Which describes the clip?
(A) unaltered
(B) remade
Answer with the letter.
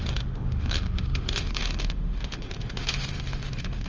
B